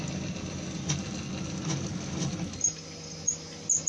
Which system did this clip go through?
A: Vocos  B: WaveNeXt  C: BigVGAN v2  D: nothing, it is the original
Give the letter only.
D